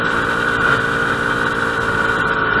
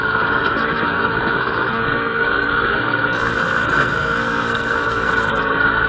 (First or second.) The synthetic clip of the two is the second